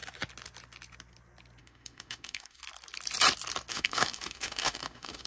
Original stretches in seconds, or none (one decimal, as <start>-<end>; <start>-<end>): 0.0-1.6; 2.6-3.7